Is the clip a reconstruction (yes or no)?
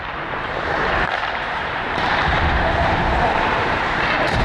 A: yes